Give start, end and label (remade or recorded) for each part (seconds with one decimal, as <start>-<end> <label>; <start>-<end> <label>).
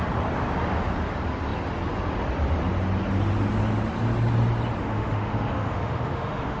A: 0.0-4.8 recorded; 4.8-6.6 remade